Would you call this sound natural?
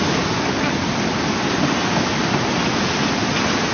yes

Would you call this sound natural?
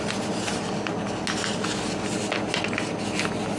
yes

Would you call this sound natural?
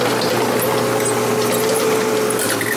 yes